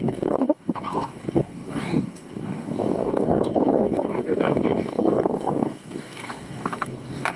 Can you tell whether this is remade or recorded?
remade